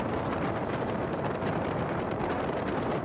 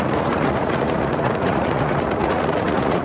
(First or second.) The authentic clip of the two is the first